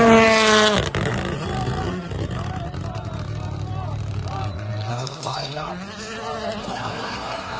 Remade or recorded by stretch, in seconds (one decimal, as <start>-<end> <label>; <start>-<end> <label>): 0.0-4.9 recorded; 4.9-5.7 remade; 5.7-6.6 recorded; 6.6-7.6 remade